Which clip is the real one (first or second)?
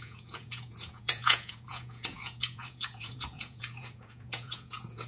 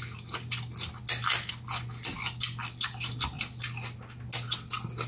second